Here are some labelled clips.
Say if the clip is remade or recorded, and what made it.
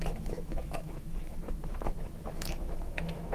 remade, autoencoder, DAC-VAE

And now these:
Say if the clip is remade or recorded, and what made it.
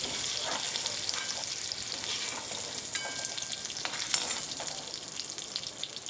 recorded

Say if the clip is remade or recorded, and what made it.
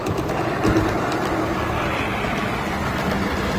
recorded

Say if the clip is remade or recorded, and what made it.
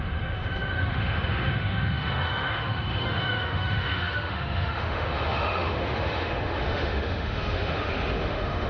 remade, autoencoder, DAC-VAE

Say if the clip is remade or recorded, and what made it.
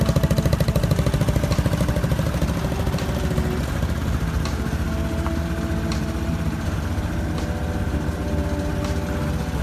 recorded